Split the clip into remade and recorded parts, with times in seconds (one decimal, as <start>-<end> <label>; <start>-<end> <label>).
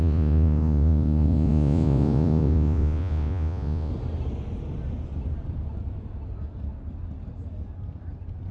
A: 0.0-3.9 remade; 3.9-8.5 recorded